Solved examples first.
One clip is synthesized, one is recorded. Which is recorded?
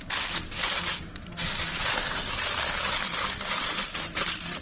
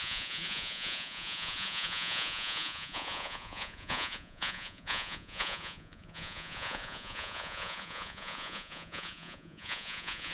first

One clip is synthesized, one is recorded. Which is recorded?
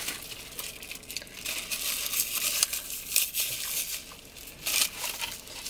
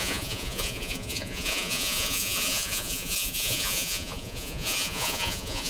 first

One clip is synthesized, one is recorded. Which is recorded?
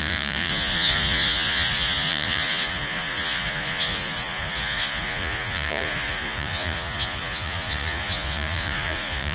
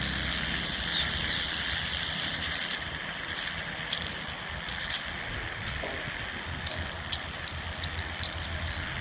second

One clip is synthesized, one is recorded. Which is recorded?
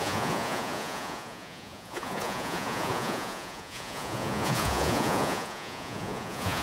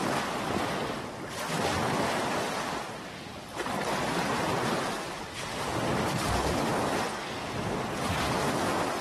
second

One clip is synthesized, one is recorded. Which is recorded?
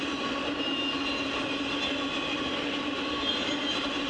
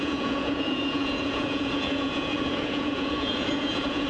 first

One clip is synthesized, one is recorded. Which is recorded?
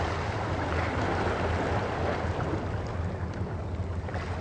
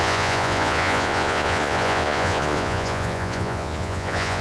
first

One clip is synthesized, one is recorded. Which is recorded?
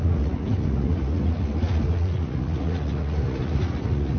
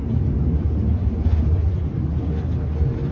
second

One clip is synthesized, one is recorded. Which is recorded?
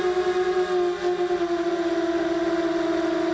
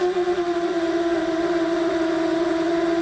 first